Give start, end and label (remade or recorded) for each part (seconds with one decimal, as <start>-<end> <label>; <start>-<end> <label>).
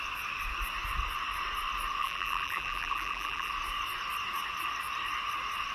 0.0-2.0 recorded; 2.0-3.5 remade; 3.5-5.7 recorded